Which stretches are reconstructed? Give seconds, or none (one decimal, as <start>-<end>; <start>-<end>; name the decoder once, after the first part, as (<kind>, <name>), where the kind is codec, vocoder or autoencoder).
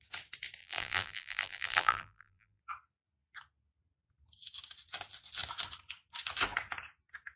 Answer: 0.6-2.6 (vocoder, BigVGAN v2)